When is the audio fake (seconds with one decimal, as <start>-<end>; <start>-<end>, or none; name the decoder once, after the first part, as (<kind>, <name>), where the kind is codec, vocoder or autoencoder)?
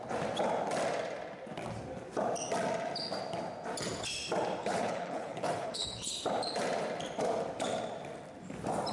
4.6-6.1 (codec, HILCodec)